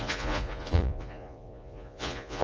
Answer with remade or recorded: remade